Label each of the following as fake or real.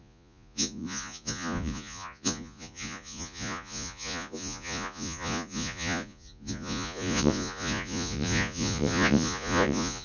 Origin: fake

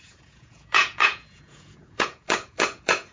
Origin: fake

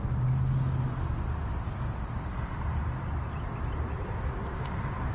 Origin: real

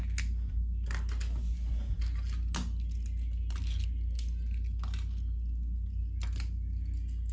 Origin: real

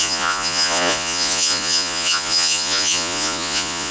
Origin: fake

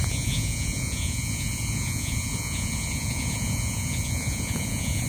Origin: fake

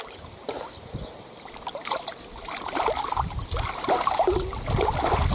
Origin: real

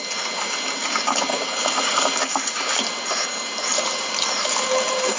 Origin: real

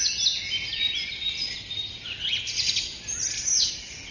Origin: real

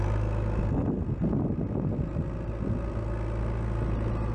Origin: real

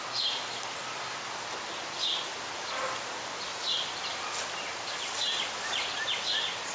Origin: real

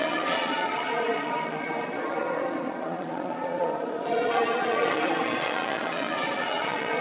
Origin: fake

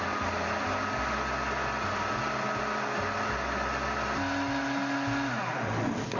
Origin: real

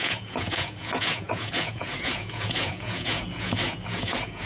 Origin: fake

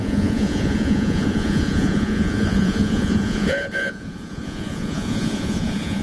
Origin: fake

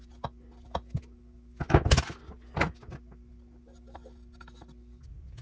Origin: real